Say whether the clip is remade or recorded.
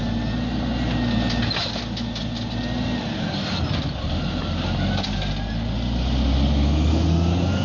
recorded